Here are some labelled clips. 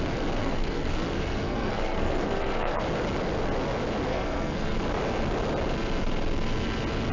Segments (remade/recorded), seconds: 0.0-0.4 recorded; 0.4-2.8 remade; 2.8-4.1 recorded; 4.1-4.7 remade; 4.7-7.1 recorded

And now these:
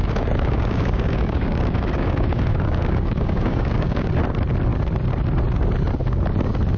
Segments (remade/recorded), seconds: 0.0-4.1 remade; 4.1-6.8 recorded

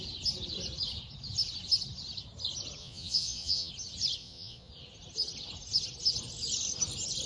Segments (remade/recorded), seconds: 0.0-2.8 recorded; 2.8-3.7 remade; 3.7-4.2 recorded; 4.2-4.7 remade; 4.7-7.3 recorded

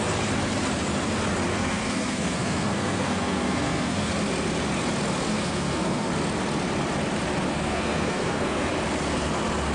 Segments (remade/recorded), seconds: 0.0-1.5 recorded; 1.5-4.1 remade; 4.1-5.3 recorded; 5.3-6.1 remade; 6.1-7.5 recorded; 7.5-8.7 remade; 8.7-9.7 recorded

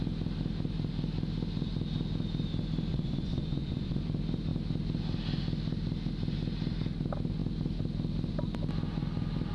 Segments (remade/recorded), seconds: 0.0-2.9 recorded; 2.9-4.0 remade; 4.0-9.5 recorded

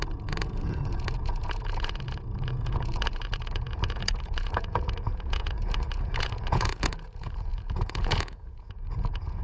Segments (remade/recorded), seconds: 0.0-9.4 remade